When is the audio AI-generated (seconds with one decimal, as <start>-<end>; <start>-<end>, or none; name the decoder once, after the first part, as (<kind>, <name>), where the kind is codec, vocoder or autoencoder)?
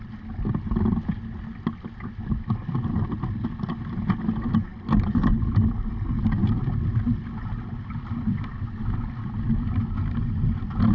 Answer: none